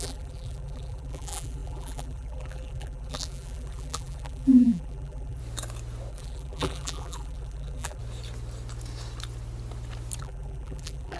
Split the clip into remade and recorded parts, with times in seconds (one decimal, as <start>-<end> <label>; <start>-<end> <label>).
0.0-5.4 remade; 5.4-6.1 recorded; 6.1-8.0 remade; 8.0-10.2 recorded; 10.2-11.2 remade